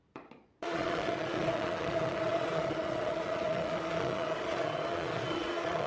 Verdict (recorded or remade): remade